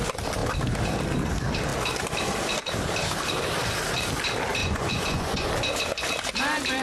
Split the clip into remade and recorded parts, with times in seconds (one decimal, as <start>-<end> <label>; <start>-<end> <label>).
0.0-4.6 recorded; 4.6-5.5 remade; 5.5-6.8 recorded